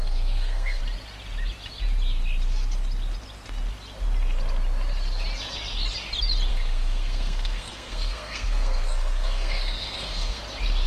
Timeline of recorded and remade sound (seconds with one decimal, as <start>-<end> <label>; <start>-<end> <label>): 0.0-0.8 remade; 0.8-6.5 recorded; 6.5-10.4 remade; 10.4-10.9 recorded